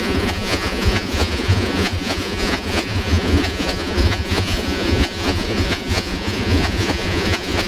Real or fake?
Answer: fake